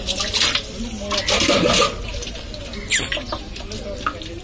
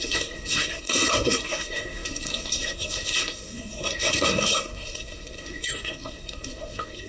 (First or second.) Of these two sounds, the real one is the first